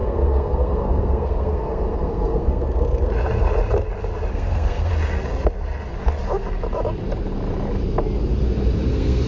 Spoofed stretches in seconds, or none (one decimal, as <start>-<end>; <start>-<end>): 0.0-3.1; 4.3-4.9; 8.9-9.3

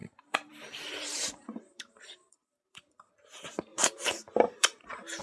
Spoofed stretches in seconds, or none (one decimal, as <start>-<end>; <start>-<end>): 0.0-3.1; 3.7-5.2

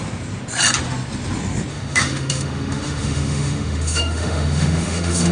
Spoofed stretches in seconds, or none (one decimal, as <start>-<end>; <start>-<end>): 1.7-5.3

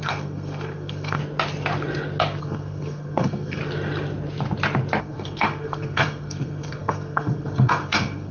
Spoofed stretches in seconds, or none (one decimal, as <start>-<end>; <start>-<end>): 0.0-1.2; 2.4-3.6; 5.0-8.3

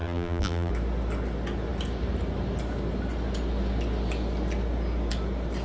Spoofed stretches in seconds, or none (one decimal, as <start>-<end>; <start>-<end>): 0.0-0.7

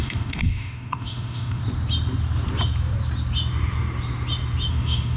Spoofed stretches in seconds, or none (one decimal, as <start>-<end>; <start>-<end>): 0.0-1.6; 4.7-5.2

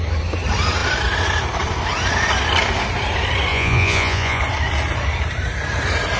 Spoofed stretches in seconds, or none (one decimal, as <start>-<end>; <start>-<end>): 3.5-4.4

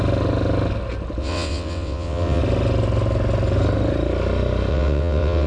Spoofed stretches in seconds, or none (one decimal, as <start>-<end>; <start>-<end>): 1.2-2.4; 4.7-5.5